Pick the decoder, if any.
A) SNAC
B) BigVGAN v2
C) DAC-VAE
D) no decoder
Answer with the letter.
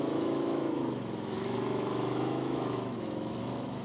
C